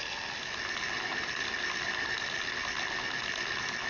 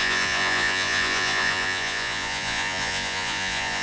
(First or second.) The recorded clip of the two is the first